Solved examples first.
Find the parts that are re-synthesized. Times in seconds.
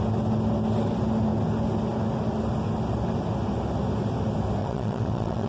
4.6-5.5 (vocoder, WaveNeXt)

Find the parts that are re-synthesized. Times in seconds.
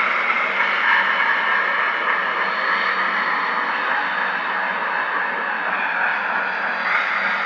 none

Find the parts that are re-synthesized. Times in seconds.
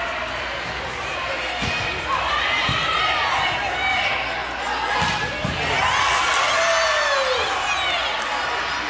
none